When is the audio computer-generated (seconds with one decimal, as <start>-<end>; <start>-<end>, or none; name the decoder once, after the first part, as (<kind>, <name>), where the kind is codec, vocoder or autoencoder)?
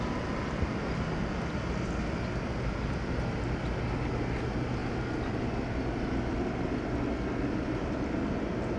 none